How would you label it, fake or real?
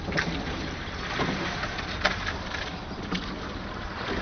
real